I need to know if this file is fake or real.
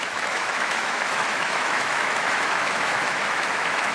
fake